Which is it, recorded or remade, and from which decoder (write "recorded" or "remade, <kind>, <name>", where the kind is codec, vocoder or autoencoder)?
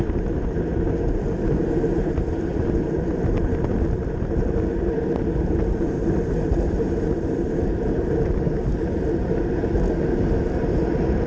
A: recorded